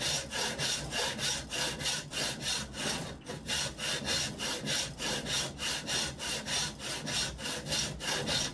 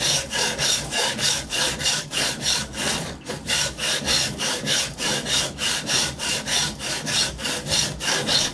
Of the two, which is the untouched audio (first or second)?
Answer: first